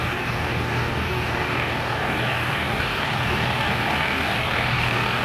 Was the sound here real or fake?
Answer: fake